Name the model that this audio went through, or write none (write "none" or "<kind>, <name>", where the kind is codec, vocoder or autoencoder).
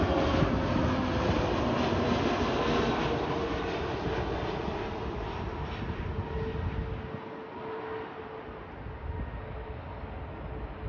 none